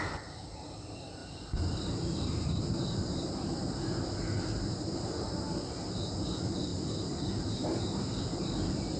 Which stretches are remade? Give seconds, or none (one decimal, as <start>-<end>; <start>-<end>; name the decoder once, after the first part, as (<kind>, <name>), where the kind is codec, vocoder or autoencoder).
1.2-2.6 (vocoder, BigVGAN v2); 6.7-8.2